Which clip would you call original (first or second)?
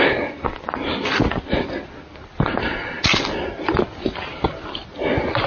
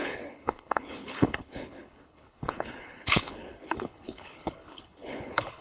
first